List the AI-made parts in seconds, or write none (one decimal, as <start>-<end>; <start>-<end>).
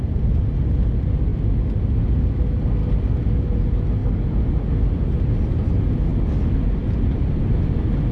none